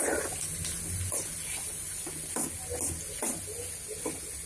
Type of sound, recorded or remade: recorded